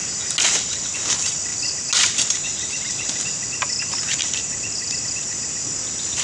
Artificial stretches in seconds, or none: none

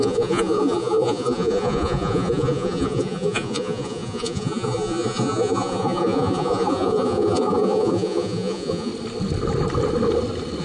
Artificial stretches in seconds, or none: 0.0-8.9

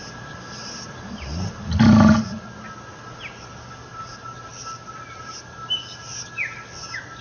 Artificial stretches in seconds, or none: none

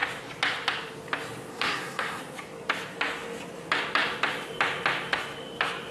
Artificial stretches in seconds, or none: 1.5-2.2

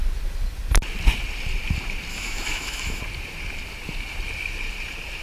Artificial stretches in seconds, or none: 2.1-3.0